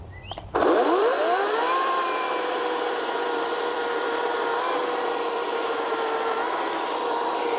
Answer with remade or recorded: remade